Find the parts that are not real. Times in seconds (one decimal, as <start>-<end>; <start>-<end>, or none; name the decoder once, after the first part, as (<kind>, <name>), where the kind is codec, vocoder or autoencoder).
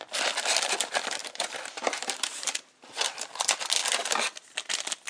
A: 1.2-2.4 (vocoder, BigVGAN v2)